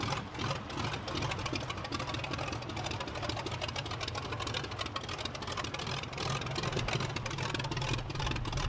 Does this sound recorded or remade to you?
recorded